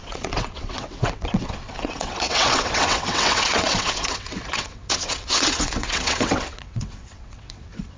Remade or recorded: remade